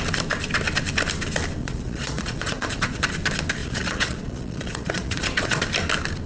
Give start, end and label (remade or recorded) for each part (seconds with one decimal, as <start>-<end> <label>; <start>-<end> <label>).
0.0-1.6 recorded; 1.6-3.0 remade; 3.0-3.6 recorded; 3.6-5.6 remade; 5.6-6.3 recorded